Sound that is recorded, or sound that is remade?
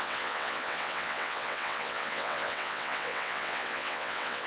remade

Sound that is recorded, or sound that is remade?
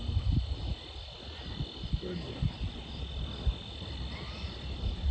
recorded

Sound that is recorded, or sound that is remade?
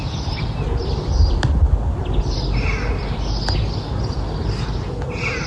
recorded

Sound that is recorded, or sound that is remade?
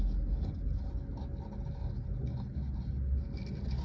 recorded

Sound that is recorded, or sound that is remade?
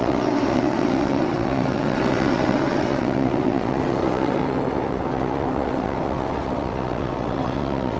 remade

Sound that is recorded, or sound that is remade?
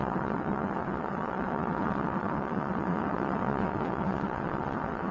remade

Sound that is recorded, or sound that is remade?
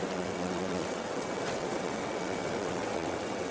remade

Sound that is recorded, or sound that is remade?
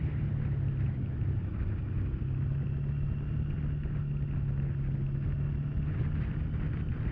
recorded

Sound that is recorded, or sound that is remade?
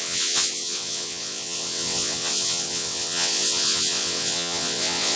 remade